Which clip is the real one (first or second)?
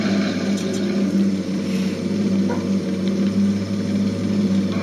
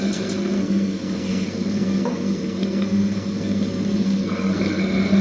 first